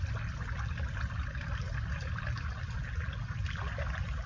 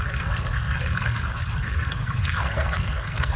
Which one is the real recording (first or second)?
first